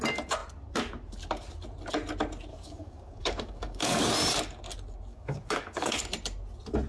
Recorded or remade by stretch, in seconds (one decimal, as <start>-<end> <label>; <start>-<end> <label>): 0.0-2.5 recorded; 2.5-4.0 remade; 4.0-5.1 recorded; 5.1-6.0 remade; 6.0-6.9 recorded